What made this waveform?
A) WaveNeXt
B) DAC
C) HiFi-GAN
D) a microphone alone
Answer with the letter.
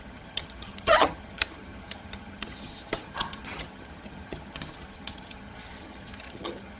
C